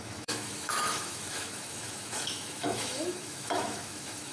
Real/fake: fake